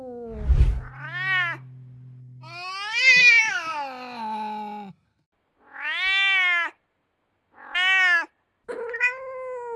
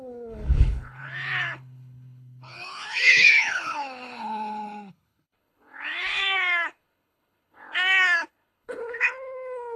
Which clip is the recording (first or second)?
first